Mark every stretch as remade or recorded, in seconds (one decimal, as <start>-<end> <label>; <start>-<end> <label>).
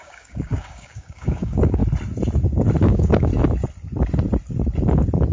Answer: 0.0-1.8 remade; 1.8-2.8 recorded; 2.8-3.3 remade; 3.3-5.3 recorded